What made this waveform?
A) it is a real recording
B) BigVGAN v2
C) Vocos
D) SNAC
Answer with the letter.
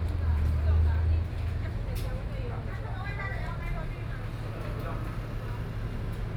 A